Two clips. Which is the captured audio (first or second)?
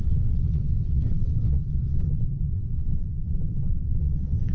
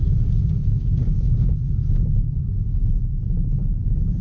second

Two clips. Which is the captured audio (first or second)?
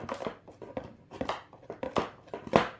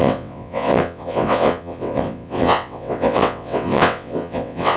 first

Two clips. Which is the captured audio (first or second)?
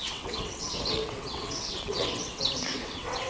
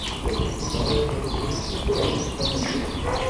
second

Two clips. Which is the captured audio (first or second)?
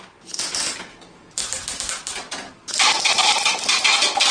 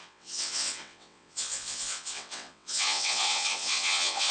first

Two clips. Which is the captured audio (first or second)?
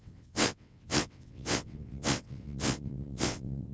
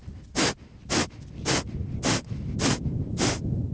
second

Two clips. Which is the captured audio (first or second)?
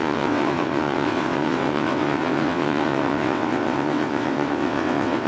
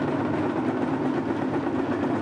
second